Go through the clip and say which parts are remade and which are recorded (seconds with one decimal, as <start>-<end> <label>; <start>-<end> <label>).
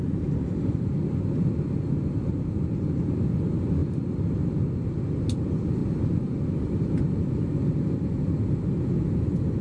0.0-3.8 recorded; 3.8-4.3 remade; 4.3-5.8 recorded; 5.8-7.1 remade; 7.1-9.6 recorded